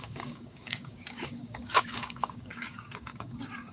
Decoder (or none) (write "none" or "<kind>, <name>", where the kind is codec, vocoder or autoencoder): codec, DAC